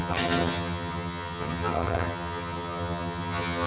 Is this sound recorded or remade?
remade